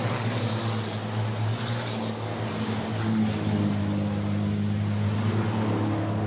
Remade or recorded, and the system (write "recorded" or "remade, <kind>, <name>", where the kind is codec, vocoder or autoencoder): recorded